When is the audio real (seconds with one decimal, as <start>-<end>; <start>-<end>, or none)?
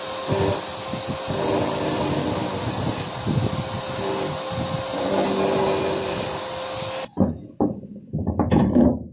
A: 0.0-9.1